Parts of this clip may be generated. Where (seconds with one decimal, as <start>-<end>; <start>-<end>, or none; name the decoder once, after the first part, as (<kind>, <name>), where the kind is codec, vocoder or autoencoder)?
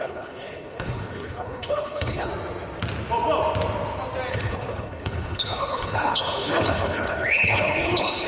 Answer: 0.0-2.3 (codec, HILCodec); 4.3-8.3